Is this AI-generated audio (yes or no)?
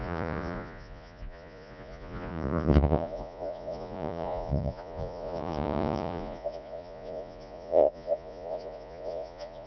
yes